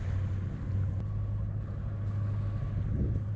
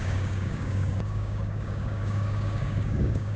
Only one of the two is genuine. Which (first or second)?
first